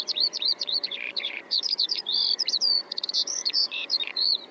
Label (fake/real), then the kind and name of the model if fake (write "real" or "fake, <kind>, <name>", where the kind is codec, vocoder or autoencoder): fake, vocoder, Vocos